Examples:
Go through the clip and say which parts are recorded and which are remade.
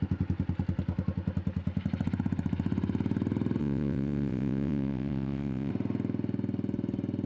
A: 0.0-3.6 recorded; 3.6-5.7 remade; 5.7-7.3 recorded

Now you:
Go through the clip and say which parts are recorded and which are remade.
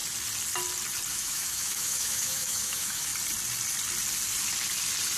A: 0.0-1.1 recorded; 1.1-3.1 remade; 3.1-5.2 recorded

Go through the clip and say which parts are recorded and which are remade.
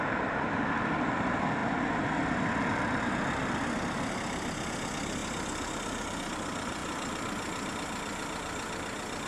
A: 0.0-1.6 remade; 1.6-4.1 recorded; 4.1-9.3 remade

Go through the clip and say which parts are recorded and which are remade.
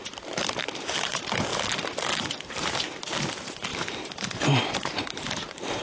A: 0.0-1.5 remade; 1.5-2.5 recorded; 2.5-5.8 remade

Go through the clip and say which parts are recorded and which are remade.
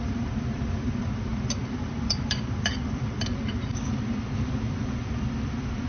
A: 0.0-5.9 remade